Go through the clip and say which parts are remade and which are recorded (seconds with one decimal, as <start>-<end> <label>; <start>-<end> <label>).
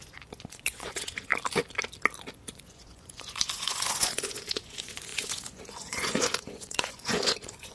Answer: 0.0-1.3 remade; 1.3-2.3 recorded; 2.3-7.7 remade